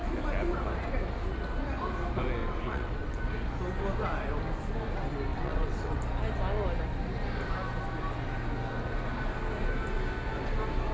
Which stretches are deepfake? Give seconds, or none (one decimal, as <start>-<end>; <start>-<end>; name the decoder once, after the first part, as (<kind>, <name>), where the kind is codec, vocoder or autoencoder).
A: 2.4-3.2 (vocoder, WaveNeXt); 5.3-6.0